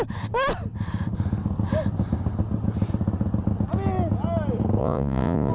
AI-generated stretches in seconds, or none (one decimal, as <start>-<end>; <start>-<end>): 4.8-5.5